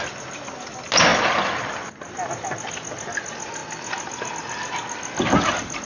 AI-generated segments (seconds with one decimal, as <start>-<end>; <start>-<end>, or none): none

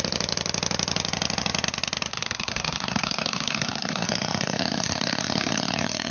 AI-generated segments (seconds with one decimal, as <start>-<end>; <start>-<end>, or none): 2.1-6.1